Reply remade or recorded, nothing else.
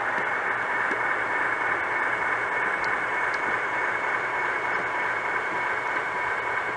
recorded